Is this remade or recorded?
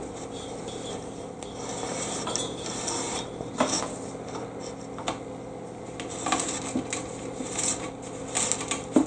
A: recorded